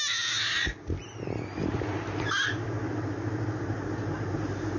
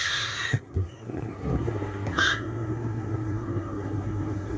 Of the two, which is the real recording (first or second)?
first